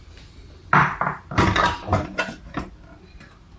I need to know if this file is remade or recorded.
remade